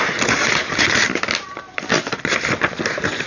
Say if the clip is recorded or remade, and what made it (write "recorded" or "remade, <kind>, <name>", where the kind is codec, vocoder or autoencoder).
recorded